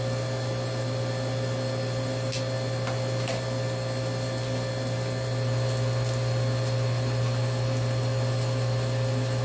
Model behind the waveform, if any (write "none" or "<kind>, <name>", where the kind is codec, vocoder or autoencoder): none